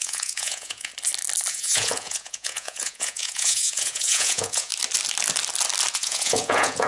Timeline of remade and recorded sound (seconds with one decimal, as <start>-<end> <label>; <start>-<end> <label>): 0.0-0.9 remade; 0.9-1.5 recorded; 1.5-4.7 remade; 4.7-5.9 recorded; 5.9-6.9 remade